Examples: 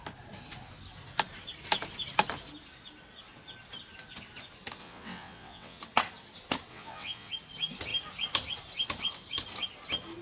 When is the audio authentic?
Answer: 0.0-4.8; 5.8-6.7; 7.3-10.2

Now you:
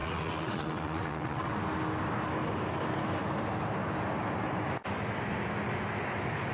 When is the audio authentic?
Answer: 1.5-6.5